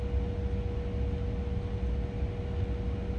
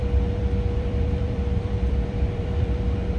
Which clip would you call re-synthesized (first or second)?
second